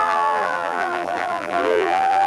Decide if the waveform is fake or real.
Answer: fake